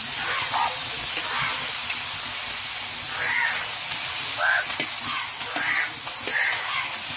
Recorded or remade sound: recorded